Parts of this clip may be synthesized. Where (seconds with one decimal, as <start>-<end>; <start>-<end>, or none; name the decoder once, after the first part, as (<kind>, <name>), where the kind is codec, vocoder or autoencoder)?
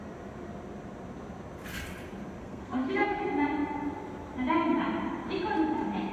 2.4-3.2 (codec, SNAC)